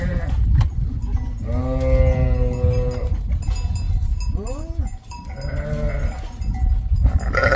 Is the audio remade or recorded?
recorded